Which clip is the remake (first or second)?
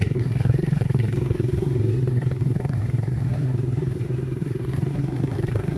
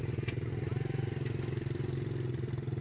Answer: first